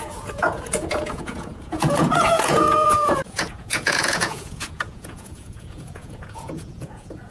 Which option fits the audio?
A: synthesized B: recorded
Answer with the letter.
A